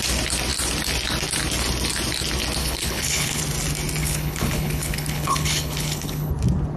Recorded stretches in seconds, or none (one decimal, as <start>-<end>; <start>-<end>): 0.0-2.6; 3.4-4.0; 6.3-6.8